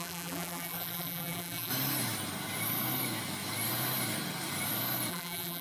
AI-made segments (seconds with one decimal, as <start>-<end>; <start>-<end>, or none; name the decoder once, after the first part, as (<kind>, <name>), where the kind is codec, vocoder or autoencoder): 0.0-1.7 (vocoder, BigVGAN v2); 5.1-5.6